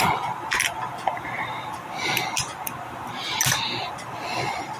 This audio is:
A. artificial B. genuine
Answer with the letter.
B